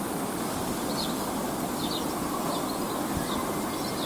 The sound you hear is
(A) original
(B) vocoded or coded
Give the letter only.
A